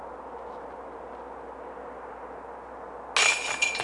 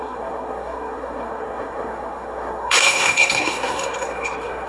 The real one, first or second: first